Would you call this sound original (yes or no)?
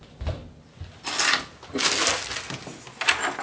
yes